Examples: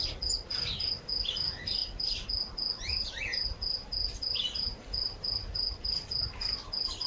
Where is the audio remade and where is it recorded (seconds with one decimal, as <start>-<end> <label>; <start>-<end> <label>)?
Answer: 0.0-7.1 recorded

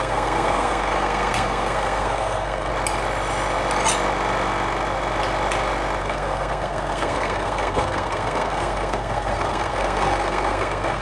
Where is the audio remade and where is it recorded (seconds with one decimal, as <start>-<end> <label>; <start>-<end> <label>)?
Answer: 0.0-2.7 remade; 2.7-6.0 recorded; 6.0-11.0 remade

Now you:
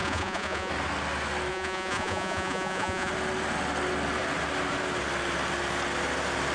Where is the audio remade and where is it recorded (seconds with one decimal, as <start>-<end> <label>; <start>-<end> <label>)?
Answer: 0.0-0.7 remade; 0.7-1.5 recorded; 1.5-3.1 remade; 3.1-6.5 recorded

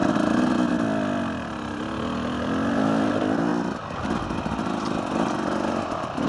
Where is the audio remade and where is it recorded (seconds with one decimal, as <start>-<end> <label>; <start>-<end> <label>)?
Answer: 0.0-6.3 recorded

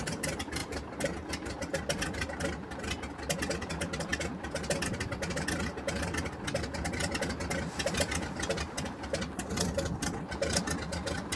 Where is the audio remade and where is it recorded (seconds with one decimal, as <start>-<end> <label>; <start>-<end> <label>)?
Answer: 0.0-0.6 recorded; 0.6-1.7 remade; 1.7-11.4 recorded

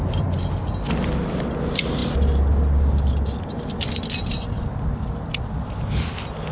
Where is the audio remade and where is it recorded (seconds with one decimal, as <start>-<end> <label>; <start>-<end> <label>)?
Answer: 0.0-6.5 recorded

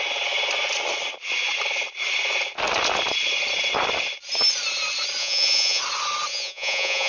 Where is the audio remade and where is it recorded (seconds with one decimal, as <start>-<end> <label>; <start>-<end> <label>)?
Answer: 0.0-5.2 recorded; 5.2-5.8 remade; 5.8-6.3 recorded; 6.3-7.1 remade